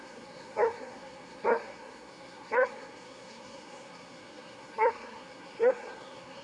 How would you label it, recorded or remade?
remade